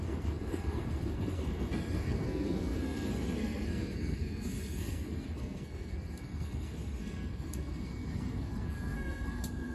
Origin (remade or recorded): remade